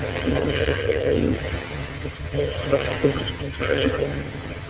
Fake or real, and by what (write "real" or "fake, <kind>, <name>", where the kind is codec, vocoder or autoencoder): fake, vocoder, HiFi-GAN